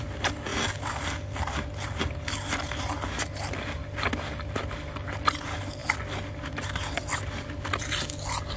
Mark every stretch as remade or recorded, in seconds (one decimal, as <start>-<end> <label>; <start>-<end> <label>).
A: 0.0-8.6 recorded